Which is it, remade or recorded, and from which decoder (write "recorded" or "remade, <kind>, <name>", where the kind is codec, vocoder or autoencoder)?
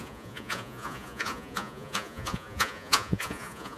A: remade, vocoder, Vocos